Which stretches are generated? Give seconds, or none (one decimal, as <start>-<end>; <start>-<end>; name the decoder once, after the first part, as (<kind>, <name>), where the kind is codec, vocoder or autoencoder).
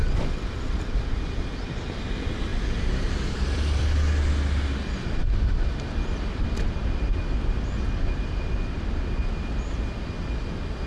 2.5-3.8 (vocoder, BigVGAN v2)